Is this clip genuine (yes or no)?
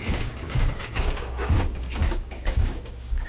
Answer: no